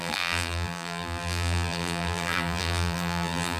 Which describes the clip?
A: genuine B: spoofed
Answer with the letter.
B